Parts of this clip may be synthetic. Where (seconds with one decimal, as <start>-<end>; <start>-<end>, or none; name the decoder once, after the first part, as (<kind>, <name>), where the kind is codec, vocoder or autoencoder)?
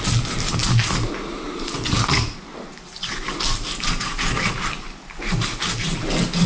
none